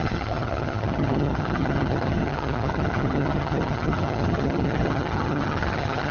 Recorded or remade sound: remade